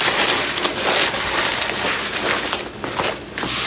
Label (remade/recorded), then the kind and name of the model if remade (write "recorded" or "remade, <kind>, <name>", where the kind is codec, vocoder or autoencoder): recorded